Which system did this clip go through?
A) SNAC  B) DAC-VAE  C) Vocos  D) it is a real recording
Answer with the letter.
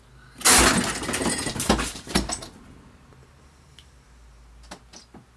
D